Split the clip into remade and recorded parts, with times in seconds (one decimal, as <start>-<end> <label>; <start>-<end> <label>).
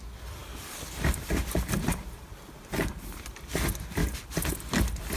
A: 0.0-0.4 recorded; 0.4-3.5 remade; 3.5-5.2 recorded